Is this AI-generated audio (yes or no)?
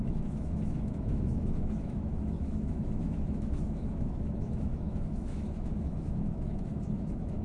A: yes